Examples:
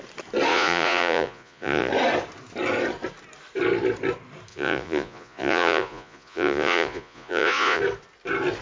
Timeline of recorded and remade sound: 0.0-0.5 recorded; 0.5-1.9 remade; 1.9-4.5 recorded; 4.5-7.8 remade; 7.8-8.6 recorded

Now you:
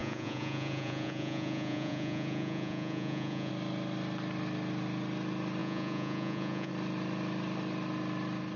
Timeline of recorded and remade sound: 0.0-3.5 remade; 3.5-5.6 recorded; 5.6-6.7 remade; 6.7-8.6 recorded

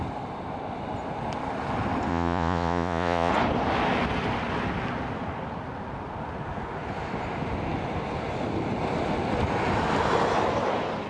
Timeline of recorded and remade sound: 0.0-2.1 recorded; 2.1-3.3 remade; 3.3-11.1 recorded